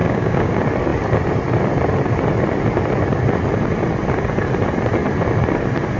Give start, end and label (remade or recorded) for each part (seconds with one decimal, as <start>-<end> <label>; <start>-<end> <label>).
0.0-0.5 remade; 0.5-6.0 recorded